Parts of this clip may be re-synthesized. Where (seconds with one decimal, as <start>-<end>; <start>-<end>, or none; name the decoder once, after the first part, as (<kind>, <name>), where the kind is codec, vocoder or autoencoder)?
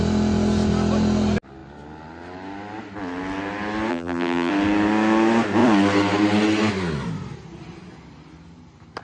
3.9-4.5 (vocoder, BigVGAN v2)